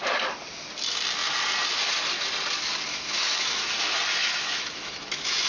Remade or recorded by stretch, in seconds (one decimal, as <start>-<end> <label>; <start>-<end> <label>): 0.0-2.9 recorded; 2.9-3.7 remade; 3.7-4.2 recorded; 4.2-5.5 remade